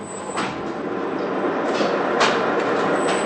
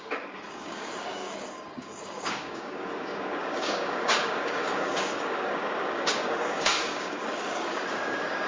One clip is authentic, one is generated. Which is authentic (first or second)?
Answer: first